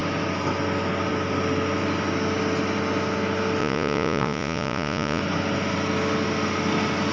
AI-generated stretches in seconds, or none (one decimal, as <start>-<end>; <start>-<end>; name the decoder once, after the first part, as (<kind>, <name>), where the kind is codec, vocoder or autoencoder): 3.6-5.2 (vocoder, Vocos)